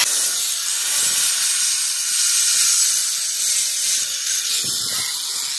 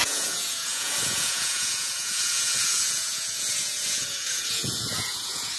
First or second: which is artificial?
second